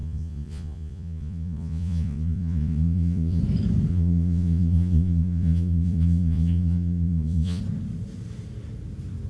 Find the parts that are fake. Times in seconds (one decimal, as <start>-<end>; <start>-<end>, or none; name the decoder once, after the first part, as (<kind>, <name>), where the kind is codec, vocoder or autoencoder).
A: 0.0-3.4 (vocoder, Vocos); 3.9-7.6